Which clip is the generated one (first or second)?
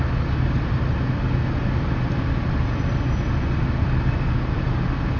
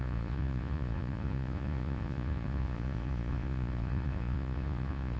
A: second